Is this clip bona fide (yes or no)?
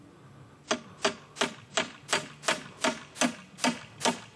yes